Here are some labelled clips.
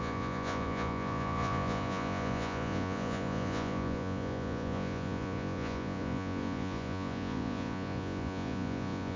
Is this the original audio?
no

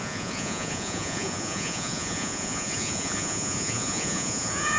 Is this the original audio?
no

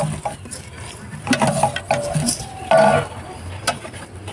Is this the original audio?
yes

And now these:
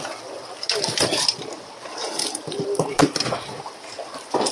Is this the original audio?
yes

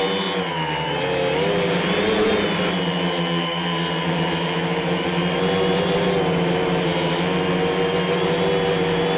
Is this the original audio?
yes